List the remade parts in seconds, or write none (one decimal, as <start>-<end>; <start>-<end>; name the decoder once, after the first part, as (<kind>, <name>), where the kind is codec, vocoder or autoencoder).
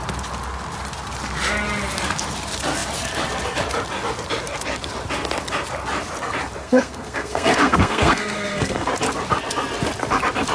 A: 6.6-8.9 (codec, SNAC)